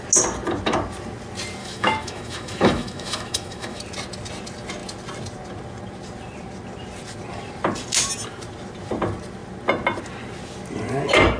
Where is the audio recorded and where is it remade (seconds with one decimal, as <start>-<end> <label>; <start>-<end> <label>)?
0.0-1.6 recorded; 1.6-3.8 remade; 3.8-11.4 recorded